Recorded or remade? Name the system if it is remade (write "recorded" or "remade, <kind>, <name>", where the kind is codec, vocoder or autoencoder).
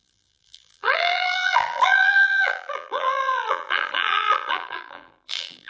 remade, vocoder, BigVGAN v2